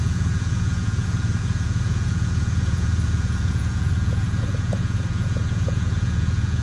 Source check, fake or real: fake